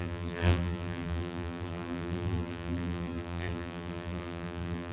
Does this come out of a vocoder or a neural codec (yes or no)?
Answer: yes